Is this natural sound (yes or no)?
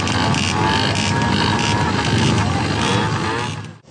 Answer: yes